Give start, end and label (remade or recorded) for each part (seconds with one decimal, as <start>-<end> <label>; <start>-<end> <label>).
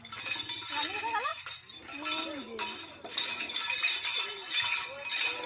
0.0-5.5 recorded